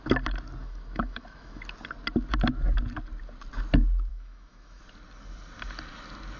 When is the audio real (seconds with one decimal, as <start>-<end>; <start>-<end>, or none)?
0.0-0.6; 1.6-4.1; 4.8-6.4